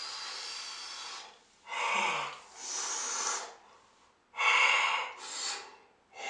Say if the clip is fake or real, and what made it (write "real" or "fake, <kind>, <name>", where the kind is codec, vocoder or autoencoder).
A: real